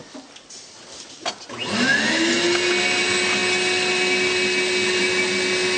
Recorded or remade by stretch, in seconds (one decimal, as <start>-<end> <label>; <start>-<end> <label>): 0.0-5.8 recorded